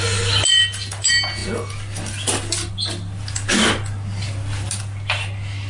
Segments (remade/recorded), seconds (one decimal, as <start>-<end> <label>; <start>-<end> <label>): 0.0-5.7 recorded